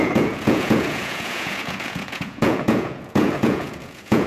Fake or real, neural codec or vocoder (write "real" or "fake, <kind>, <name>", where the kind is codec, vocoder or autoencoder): fake, vocoder, Vocos